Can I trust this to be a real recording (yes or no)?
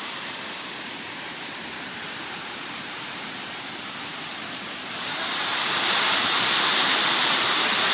no